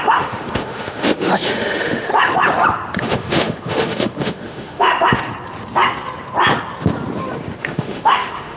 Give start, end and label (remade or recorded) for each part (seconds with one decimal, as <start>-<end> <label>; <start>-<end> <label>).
0.0-2.1 remade; 2.1-3.0 recorded; 3.0-5.3 remade; 5.3-7.6 recorded; 7.6-8.6 remade

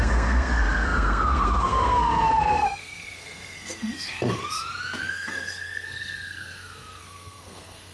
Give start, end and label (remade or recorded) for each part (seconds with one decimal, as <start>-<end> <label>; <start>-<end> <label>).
0.0-4.4 remade; 4.4-5.0 recorded; 5.0-7.9 remade

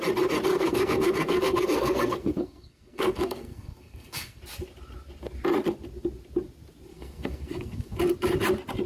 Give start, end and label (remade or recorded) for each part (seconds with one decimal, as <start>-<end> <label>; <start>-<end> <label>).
0.0-0.5 recorded; 0.5-4.4 remade; 4.4-6.9 recorded; 6.9-8.0 remade; 8.0-8.9 recorded

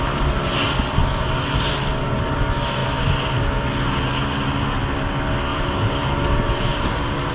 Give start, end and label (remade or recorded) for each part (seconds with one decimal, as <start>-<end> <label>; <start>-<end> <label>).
0.0-5.5 recorded; 5.5-7.3 remade

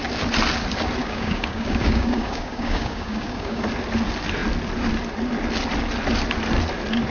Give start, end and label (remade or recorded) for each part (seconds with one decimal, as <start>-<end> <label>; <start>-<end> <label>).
0.0-1.0 recorded; 1.0-3.6 remade; 3.6-7.1 recorded

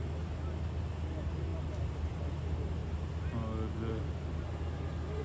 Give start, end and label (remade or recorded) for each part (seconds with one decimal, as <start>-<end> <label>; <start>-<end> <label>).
0.0-5.2 recorded

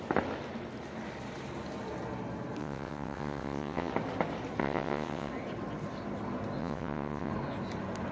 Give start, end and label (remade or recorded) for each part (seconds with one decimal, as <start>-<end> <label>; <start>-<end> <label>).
0.0-2.6 recorded; 2.6-3.9 remade; 3.9-4.6 recorded; 4.6-5.3 remade; 5.3-6.6 recorded; 6.6-7.3 remade; 7.3-8.1 recorded